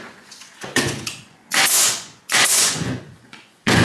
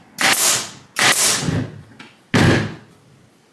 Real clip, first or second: second